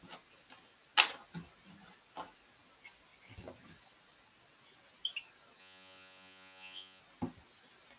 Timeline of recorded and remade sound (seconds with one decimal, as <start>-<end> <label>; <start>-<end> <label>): 0.0-5.6 recorded; 5.6-7.0 remade; 7.0-8.0 recorded